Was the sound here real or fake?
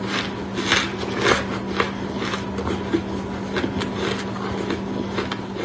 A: real